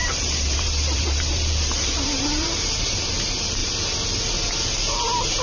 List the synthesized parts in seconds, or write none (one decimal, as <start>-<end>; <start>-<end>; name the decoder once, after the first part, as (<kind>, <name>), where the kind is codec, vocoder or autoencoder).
0.0-3.6 (vocoder, BigVGAN v2)

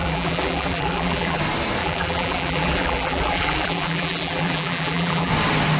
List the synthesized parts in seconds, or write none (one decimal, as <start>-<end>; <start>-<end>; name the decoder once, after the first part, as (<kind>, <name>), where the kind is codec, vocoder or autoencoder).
0.0-1.4 (vocoder, BigVGAN v2); 1.8-5.3

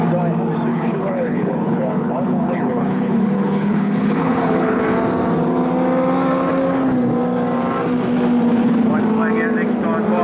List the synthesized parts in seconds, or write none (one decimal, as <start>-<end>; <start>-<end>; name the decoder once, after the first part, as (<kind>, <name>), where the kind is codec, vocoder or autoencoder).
0.7-4.8 (codec, HILCodec)

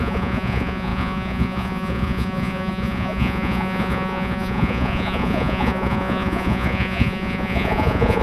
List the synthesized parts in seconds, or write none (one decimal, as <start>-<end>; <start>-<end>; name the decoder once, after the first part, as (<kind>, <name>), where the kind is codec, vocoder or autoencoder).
0.0-8.2 (vocoder, Vocos)

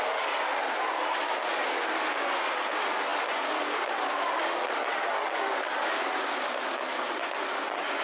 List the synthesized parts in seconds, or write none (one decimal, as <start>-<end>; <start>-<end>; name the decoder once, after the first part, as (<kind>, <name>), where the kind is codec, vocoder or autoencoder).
none